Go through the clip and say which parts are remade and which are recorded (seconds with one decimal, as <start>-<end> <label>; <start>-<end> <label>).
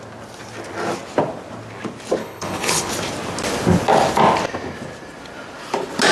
0.0-2.2 recorded; 2.2-2.9 remade; 2.9-6.1 recorded